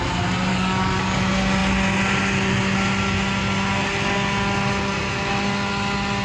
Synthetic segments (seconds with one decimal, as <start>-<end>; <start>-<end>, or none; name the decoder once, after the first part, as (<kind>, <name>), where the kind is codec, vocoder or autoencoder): 0.5-1.2 (codec, DAC)